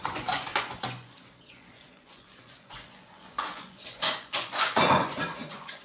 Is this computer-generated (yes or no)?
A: yes